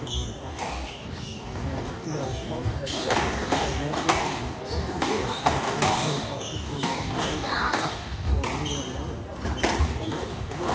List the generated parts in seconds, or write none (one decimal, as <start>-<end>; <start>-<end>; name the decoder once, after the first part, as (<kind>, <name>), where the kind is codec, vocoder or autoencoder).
0.0-8.3 (codec, DAC); 9.8-10.7